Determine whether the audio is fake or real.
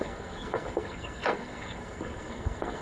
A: fake